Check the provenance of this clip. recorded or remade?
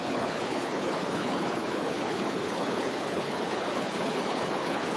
remade